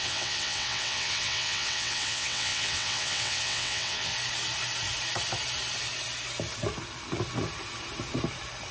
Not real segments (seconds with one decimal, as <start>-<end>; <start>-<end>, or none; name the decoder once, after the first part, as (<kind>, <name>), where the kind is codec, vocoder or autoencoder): 0.0-4.1 (vocoder, WaveNeXt)

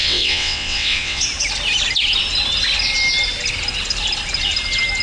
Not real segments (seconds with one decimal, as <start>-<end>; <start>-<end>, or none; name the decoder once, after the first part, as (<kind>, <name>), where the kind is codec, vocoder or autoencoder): 0.0-1.2 (vocoder, WaveNeXt)

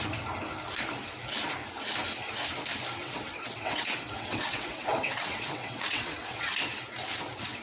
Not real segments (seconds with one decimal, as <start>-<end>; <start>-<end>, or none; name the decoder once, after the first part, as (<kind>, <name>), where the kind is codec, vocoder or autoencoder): 3.0-6.5 (vocoder, WaveNeXt)

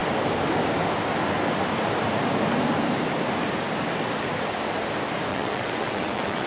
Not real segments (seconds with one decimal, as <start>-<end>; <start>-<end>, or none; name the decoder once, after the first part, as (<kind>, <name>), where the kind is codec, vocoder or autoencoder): 5.3-6.5 (vocoder, WaveNeXt)

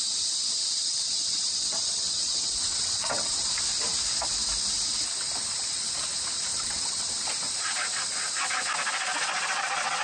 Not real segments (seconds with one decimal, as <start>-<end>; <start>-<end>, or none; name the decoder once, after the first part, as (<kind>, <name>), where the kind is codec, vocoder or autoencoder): 0.8-3.4 (vocoder, WaveNeXt); 6.5-7.1

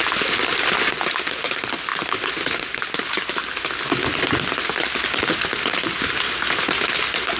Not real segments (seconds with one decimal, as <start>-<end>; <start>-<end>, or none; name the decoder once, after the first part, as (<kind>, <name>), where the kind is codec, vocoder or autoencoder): none